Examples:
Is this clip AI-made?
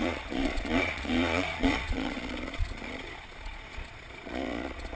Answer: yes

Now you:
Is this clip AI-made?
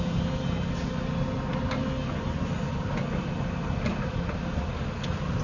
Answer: no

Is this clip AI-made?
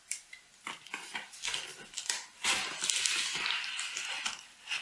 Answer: no